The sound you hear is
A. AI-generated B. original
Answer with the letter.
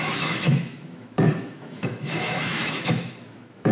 A